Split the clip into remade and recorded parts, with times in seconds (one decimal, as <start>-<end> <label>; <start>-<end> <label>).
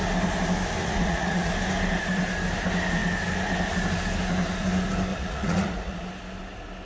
0.0-0.8 recorded; 0.8-1.5 remade; 1.5-5.1 recorded; 5.1-6.1 remade; 6.1-6.9 recorded